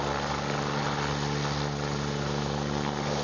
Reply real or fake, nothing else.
real